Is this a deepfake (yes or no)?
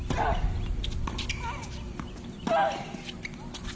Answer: no